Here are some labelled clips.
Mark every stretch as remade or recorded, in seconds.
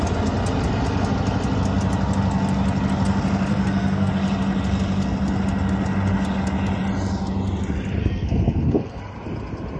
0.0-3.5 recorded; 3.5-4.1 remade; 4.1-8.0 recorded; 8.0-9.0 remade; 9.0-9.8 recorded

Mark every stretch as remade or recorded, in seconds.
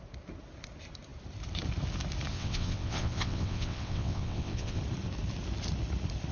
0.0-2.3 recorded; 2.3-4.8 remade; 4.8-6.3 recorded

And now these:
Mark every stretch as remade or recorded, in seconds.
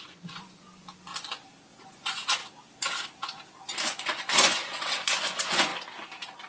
0.0-1.1 remade; 1.1-1.7 recorded; 1.7-2.4 remade; 2.4-3.8 recorded; 3.8-5.7 remade; 5.7-6.5 recorded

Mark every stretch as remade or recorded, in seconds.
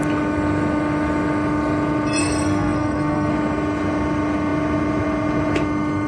0.0-2.2 recorded; 2.2-3.3 remade; 3.3-6.1 recorded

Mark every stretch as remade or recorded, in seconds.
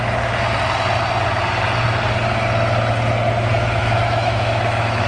0.0-3.8 recorded; 3.8-5.1 remade